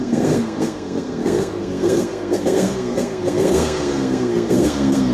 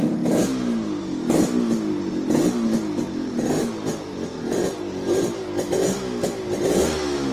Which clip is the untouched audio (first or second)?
second